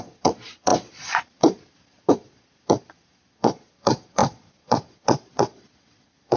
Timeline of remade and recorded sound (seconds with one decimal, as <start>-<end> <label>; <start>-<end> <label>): 0.0-6.4 remade